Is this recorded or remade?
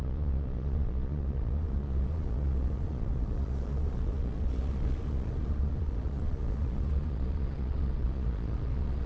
remade